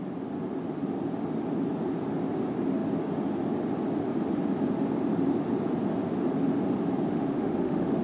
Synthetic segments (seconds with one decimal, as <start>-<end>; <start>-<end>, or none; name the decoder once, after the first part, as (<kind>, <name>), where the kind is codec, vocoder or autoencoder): 7.1-8.0 (autoencoder, DAC-VAE)